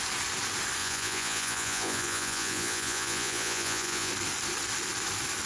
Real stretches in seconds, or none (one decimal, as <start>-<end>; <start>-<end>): 0.0-0.8; 4.1-5.5